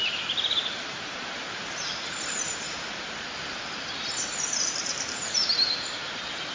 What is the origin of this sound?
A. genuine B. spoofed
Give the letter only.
B